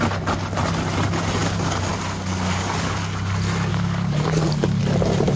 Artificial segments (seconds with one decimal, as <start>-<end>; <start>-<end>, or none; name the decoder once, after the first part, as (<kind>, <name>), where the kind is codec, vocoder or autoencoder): 1.4-1.9 (codec, DAC); 2.3-3.1; 3.7-4.8